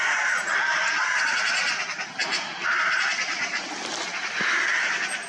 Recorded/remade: recorded